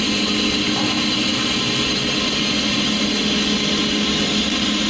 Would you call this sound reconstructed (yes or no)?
no